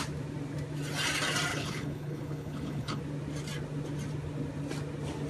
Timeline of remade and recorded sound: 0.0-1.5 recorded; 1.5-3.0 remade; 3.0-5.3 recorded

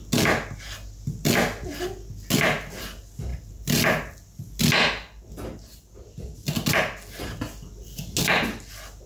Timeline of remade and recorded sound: 0.0-9.1 recorded

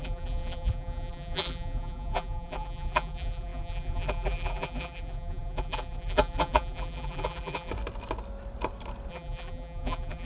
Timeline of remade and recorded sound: 0.0-7.7 remade; 7.7-9.1 recorded; 9.1-10.3 remade

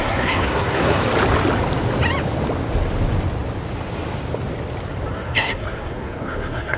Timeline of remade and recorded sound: 0.0-1.0 remade; 1.0-5.1 recorded; 5.1-6.8 remade

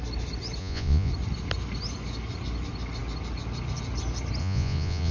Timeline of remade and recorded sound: 0.0-0.6 recorded; 0.6-1.1 remade; 1.1-4.4 recorded; 4.4-5.1 remade